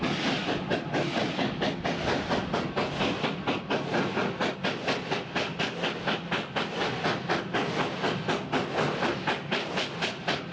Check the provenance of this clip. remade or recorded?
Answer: recorded